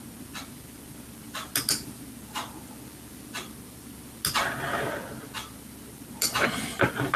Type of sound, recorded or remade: recorded